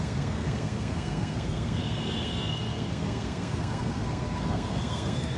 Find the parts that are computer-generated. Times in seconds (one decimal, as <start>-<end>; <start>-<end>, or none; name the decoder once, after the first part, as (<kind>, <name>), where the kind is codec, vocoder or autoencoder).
0.0-5.4 (codec, SNAC)